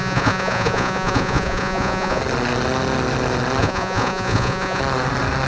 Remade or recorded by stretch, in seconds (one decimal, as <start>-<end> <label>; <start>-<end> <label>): 0.0-2.2 remade; 2.2-3.6 recorded; 3.6-4.8 remade; 4.8-5.5 recorded

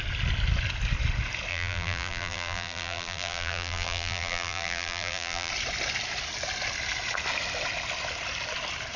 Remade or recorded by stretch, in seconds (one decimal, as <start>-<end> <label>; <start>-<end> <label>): 0.0-1.5 recorded; 1.5-5.5 remade; 5.5-9.0 recorded

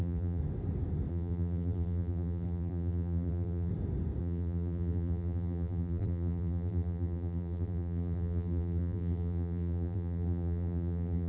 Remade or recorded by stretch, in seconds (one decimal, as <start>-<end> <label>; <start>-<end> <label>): 0.0-0.4 remade; 0.4-1.1 recorded; 1.1-3.7 remade; 3.7-4.2 recorded; 4.2-11.3 remade

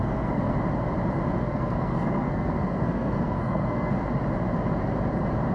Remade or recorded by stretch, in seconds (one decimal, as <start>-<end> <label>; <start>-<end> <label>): 0.0-0.6 remade; 0.6-1.4 recorded; 1.4-3.9 remade; 3.9-5.5 recorded

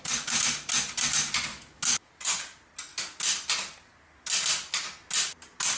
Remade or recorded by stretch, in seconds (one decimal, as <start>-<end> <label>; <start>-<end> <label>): 0.0-1.5 recorded; 1.5-2.1 remade; 2.1-5.8 recorded